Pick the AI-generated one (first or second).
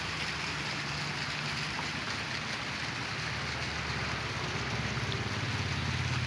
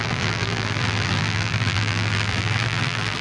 second